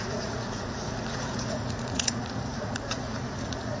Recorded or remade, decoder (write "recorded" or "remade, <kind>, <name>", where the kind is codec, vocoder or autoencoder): remade, vocoder, Vocos